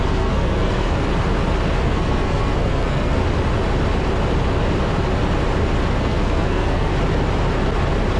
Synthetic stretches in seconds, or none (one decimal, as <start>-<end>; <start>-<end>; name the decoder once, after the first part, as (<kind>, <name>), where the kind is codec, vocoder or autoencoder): 0.0-1.1 (codec, SNAC); 1.8-3.2; 6.0-6.9